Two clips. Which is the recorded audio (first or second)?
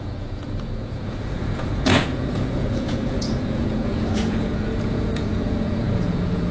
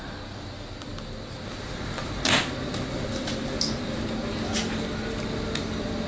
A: second